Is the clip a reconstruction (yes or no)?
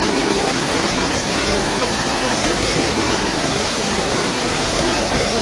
yes